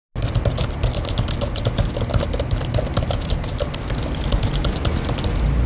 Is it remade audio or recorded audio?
recorded